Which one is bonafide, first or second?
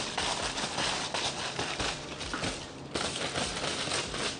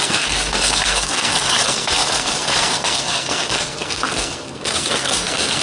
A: first